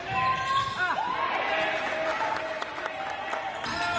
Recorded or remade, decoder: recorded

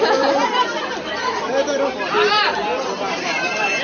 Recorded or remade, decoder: recorded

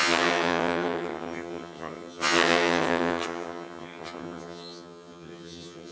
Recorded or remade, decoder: remade, vocoder, HiFi-GAN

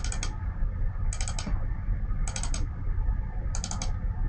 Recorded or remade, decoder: recorded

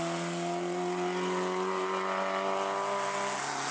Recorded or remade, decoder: recorded